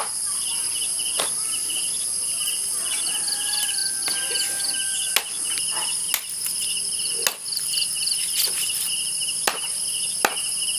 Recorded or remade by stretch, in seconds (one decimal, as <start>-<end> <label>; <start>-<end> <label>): 0.0-10.8 recorded